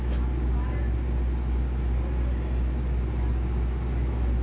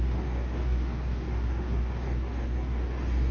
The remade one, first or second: second